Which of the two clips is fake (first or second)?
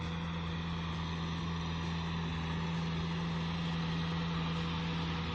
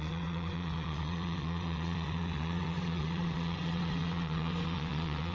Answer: second